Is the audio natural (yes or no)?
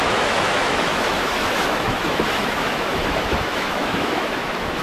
no